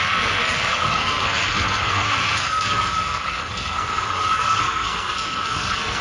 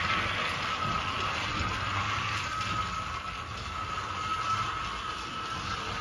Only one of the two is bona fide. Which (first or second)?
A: second